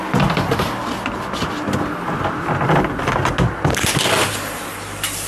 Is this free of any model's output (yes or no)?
yes